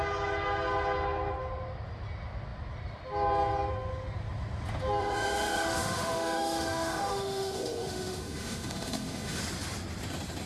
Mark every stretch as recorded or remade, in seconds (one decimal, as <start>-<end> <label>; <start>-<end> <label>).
0.0-5.0 recorded; 5.0-9.4 remade; 9.4-10.5 recorded